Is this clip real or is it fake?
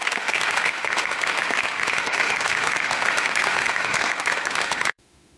fake